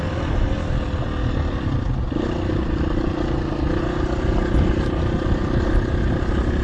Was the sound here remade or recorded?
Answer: recorded